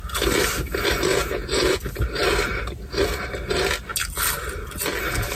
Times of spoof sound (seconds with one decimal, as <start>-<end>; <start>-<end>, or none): 1.1-1.8